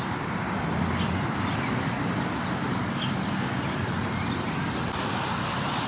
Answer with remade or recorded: recorded